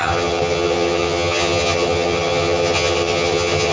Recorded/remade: remade